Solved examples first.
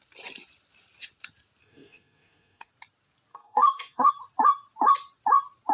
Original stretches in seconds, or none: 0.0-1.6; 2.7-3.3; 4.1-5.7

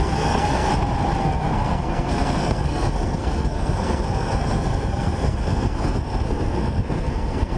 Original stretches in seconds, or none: 0.7-1.2

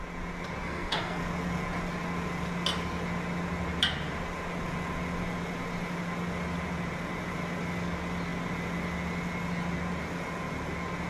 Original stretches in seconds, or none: 0.0-0.6; 1.2-11.1

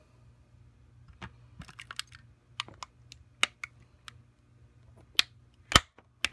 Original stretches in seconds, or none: 0.0-6.3

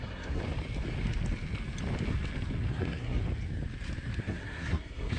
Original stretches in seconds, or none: 0.4-2.7; 3.2-4.2

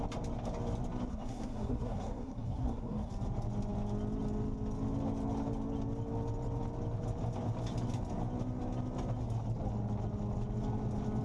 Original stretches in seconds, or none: 0.0-1.1; 3.1-11.2

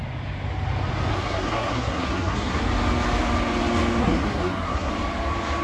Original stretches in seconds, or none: 0.0-1.1; 2.6-4.0; 4.9-5.6